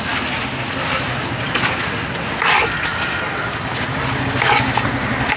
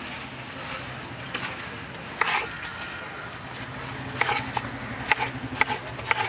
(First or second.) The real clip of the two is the second